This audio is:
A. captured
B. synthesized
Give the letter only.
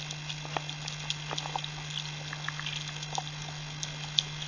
A